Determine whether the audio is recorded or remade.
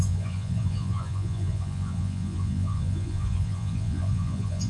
remade